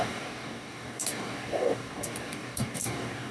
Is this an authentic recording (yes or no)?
no